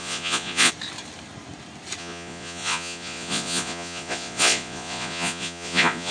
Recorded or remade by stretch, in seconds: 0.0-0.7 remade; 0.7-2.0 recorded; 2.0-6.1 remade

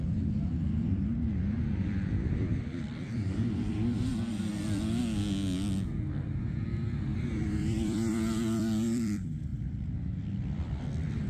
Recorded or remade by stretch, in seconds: 0.0-4.1 remade; 4.1-7.4 recorded; 7.4-11.3 remade